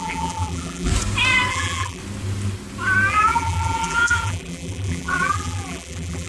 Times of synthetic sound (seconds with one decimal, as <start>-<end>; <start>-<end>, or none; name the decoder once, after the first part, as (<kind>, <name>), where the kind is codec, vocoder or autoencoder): 0.0-0.9 (vocoder, BigVGAN v2); 1.5-2.0; 3.1-6.3